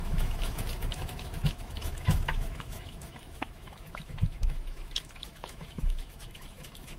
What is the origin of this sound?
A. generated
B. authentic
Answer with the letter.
A